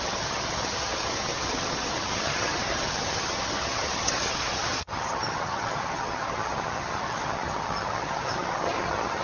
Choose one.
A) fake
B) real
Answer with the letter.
A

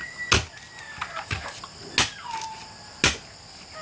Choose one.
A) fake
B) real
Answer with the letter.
B